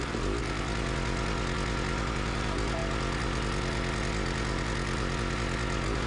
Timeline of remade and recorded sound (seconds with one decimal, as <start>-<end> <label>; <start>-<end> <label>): 0.0-6.1 recorded